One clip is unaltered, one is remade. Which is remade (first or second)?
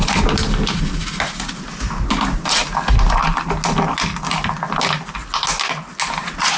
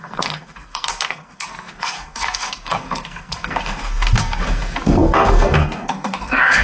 second